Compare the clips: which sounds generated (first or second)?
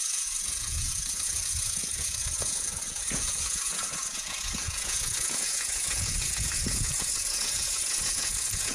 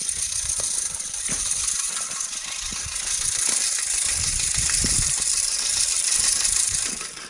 first